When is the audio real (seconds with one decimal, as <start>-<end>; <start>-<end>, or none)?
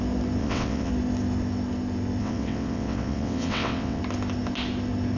0.0-0.4; 0.9-2.2; 4.0-5.2